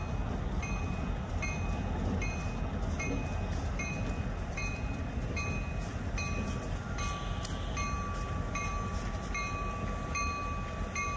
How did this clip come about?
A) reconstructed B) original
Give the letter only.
B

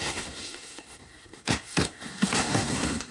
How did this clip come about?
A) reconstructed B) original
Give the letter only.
A